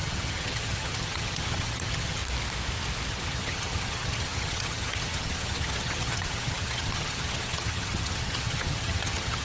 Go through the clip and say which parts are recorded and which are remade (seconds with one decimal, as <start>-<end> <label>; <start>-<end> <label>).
0.0-2.2 remade; 2.2-3.1 recorded; 3.1-9.4 remade